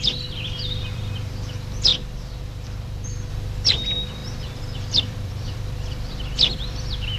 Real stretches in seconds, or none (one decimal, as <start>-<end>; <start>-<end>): none